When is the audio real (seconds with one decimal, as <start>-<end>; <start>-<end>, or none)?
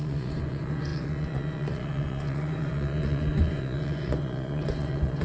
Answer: none